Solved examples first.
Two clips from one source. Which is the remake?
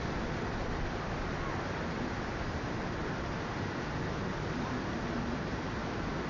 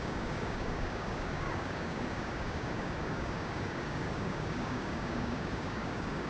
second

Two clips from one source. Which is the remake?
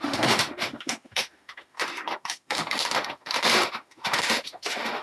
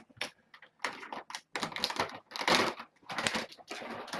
first